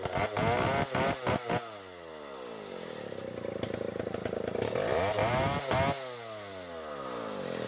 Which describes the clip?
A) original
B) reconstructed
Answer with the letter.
A